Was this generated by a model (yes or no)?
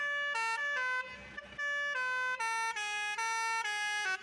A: no